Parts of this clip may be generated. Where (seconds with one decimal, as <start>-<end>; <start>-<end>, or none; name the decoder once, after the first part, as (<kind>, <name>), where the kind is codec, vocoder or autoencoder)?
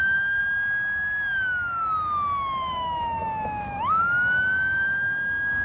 0.0-0.4 (autoencoder, DAC-VAE); 2.7-5.6